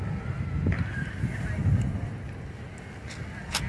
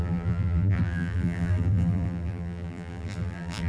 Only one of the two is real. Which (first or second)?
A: first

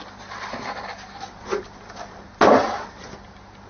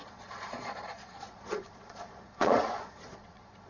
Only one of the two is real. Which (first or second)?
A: first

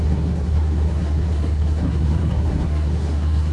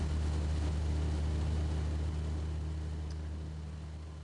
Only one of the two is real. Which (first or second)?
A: second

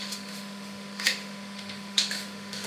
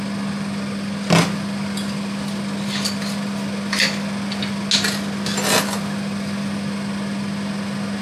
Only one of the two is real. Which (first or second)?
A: second